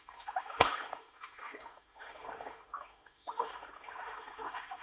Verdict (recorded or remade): remade